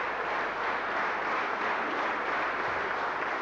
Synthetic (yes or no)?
no